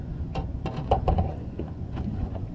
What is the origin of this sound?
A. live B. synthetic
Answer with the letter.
B